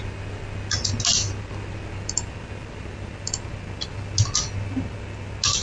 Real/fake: real